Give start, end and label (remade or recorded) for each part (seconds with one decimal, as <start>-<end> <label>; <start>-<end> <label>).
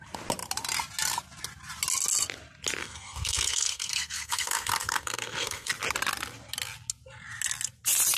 0.0-2.8 recorded; 2.8-5.7 remade; 5.7-8.2 recorded